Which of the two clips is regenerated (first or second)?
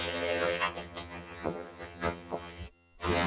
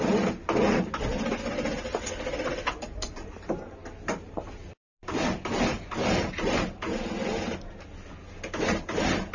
first